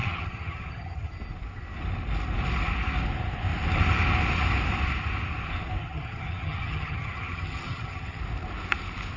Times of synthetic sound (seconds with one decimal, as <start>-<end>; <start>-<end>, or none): 0.0-1.1; 5.8-8.2